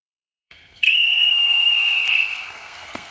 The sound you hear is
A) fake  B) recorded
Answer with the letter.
A